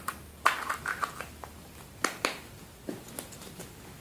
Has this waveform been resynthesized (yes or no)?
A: no